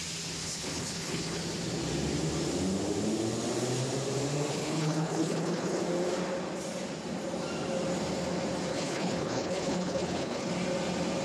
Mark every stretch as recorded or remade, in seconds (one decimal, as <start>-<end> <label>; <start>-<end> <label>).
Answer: 0.0-0.4 recorded; 0.4-1.4 remade; 1.4-4.5 recorded; 4.5-5.8 remade; 5.8-8.7 recorded; 8.7-10.5 remade; 10.5-11.2 recorded